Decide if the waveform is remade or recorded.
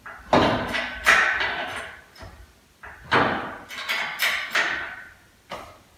recorded